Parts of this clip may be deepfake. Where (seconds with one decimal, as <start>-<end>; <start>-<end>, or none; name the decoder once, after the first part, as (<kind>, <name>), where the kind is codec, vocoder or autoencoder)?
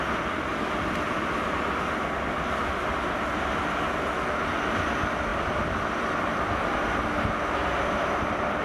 0.0-0.5 (vocoder, BigVGAN v2); 4.5-5.3